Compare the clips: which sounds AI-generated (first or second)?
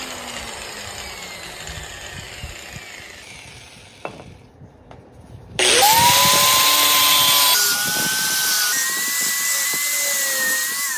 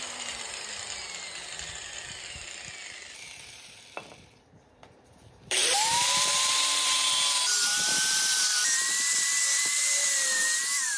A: second